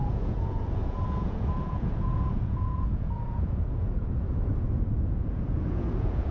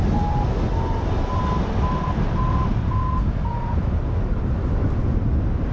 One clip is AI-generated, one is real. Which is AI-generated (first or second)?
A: first